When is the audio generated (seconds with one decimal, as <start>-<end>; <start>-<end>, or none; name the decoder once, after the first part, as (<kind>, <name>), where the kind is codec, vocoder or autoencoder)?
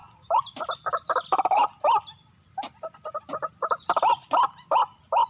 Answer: none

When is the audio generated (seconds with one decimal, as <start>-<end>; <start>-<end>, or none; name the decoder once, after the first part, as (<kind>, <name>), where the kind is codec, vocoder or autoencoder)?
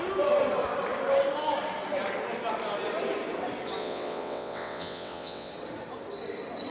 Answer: 3.8-5.5 (vocoder, WaveNeXt)